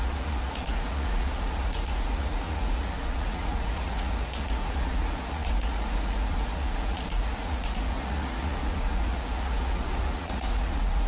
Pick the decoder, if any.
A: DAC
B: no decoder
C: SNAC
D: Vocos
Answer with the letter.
D